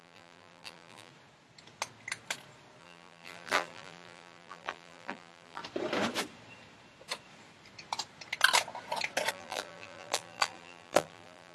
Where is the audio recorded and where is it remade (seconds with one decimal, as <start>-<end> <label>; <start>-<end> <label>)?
0.0-1.1 remade; 1.1-2.8 recorded; 2.8-5.6 remade; 5.6-9.3 recorded; 9.3-11.5 remade